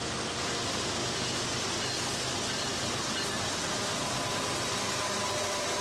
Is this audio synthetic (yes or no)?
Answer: no